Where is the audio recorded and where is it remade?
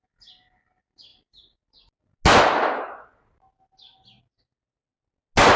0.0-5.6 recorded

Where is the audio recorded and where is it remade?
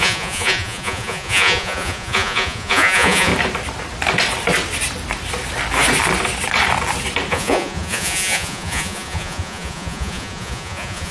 0.0-3.3 remade; 3.3-7.3 recorded; 7.3-11.1 remade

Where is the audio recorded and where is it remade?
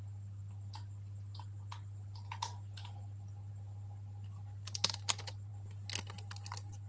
0.0-6.9 recorded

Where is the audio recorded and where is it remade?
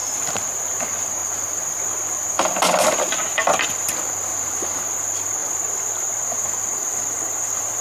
0.0-0.7 remade; 0.7-4.3 recorded; 4.3-4.8 remade; 4.8-7.8 recorded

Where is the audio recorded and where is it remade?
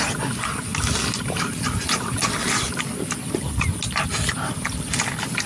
0.0-5.5 recorded